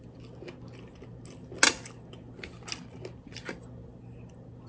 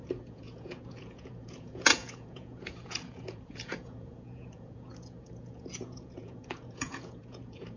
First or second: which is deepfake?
second